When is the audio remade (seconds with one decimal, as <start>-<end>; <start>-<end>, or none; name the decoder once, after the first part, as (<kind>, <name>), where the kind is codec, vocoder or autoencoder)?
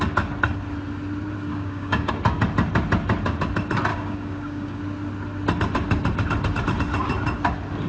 1.5-2.1 (codec, DAC); 3.9-4.8